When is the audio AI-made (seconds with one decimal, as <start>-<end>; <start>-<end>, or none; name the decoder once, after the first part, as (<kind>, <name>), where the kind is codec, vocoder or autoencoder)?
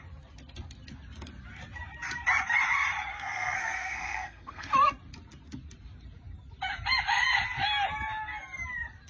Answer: 3.1-4.7 (codec, SNAC)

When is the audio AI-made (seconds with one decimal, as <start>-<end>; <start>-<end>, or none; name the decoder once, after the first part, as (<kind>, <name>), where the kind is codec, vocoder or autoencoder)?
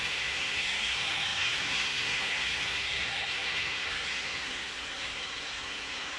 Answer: 0.0-6.2 (codec, SNAC)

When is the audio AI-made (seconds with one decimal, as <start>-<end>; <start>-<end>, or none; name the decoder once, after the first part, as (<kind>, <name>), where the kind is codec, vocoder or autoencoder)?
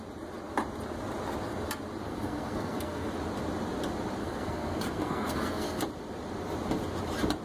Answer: 2.0-3.1 (codec, SNAC); 4.2-5.8